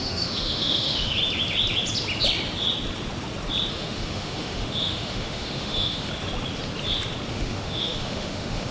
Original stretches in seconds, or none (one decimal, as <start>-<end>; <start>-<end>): 1.2-3.7; 6.1-7.3

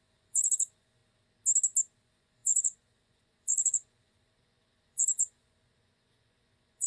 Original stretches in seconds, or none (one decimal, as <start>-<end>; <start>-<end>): 1.0-2.0

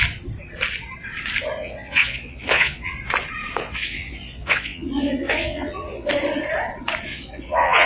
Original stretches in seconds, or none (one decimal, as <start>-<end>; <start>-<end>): 0.0-1.6; 2.9-3.6; 6.1-7.1

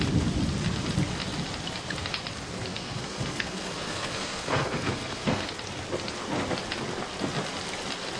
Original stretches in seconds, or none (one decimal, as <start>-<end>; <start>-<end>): 0.0-2.7; 5.5-8.2

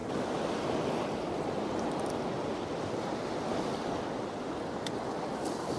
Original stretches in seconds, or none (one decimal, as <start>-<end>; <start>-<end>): 0.0-5.8

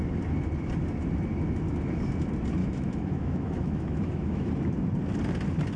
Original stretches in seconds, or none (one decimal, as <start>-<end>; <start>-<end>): 0.0-2.6; 4.5-5.8

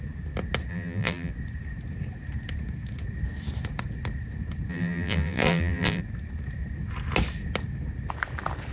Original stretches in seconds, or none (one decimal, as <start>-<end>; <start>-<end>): 0.0-0.7; 1.3-4.7; 6.0-8.7